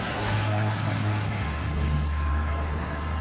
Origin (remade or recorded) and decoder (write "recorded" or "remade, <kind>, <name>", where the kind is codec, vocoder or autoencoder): remade, codec, SNAC